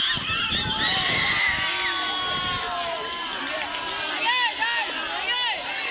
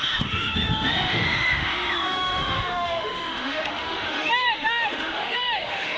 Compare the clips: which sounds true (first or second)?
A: first